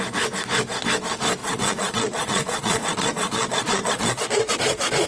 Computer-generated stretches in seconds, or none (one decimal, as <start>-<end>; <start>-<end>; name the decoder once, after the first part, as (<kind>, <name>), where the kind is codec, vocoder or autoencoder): 1.4-4.5 (vocoder, Vocos)